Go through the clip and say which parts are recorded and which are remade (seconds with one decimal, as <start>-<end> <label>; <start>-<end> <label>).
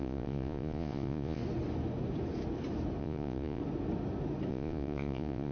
0.0-1.4 remade; 1.4-3.0 recorded; 3.0-3.6 remade; 3.6-4.5 recorded; 4.5-5.5 remade